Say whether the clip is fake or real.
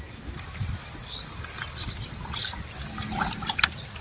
real